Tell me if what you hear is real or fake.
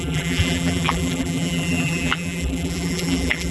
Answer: fake